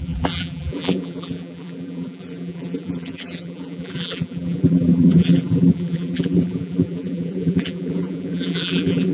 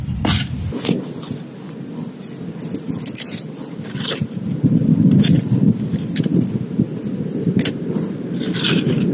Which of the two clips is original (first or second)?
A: second